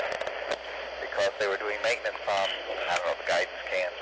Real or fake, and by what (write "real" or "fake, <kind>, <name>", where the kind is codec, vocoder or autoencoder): real